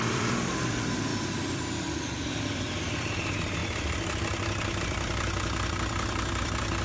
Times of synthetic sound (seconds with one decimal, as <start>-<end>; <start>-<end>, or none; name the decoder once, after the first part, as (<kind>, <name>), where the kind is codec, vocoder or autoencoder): 0.0-6.8 (vocoder, BigVGAN v2)